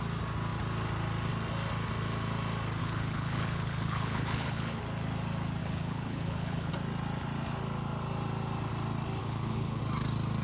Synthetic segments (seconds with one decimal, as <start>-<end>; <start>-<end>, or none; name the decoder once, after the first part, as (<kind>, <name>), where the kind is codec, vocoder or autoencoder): 2.8-4.8 (codec, HILCodec); 5.6-6.7; 9.2-9.8